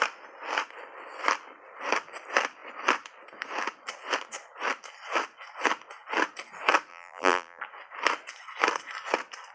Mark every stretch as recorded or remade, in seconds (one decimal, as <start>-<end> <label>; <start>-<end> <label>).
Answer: 0.0-6.9 recorded; 6.9-7.6 remade; 7.6-9.5 recorded